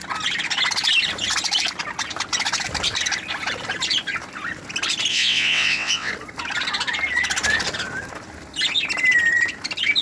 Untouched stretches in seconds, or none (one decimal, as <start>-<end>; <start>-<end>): 0.0-5.1; 6.1-10.0